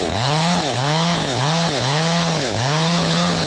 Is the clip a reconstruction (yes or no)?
yes